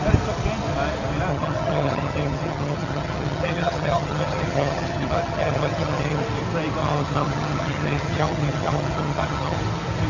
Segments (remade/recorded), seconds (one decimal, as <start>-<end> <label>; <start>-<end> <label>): 0.0-1.3 recorded; 1.3-6.2 remade; 6.2-6.8 recorded; 6.8-9.6 remade; 9.6-10.1 recorded